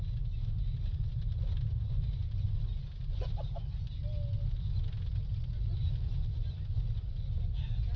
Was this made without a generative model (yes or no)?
yes